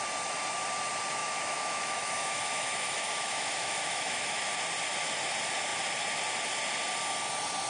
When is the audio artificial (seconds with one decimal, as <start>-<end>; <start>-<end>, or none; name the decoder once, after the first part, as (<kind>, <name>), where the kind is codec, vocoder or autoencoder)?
1.2-4.5 (autoencoder, DAC-VAE)